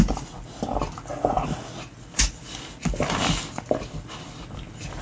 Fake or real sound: real